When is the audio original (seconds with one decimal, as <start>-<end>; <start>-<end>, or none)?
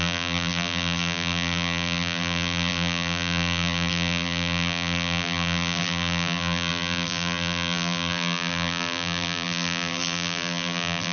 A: none